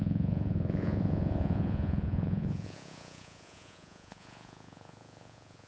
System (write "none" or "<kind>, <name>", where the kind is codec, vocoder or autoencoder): vocoder, Vocos